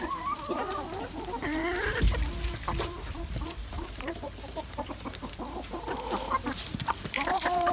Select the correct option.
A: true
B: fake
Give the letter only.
B